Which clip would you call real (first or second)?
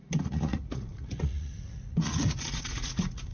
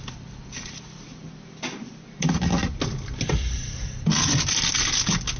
second